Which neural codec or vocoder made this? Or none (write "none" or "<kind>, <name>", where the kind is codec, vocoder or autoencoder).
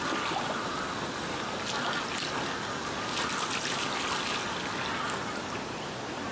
none